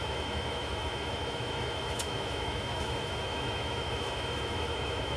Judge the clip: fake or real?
fake